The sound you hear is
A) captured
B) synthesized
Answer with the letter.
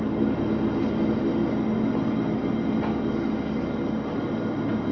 A